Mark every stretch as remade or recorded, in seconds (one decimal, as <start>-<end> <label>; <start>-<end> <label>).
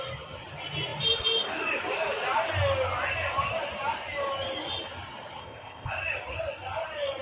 0.0-5.4 recorded; 5.4-5.9 remade; 5.9-7.2 recorded